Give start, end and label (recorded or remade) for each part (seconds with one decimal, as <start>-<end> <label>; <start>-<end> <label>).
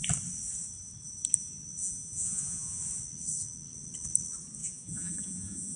0.0-1.8 recorded; 1.8-2.8 remade; 2.8-4.6 recorded; 4.6-5.8 remade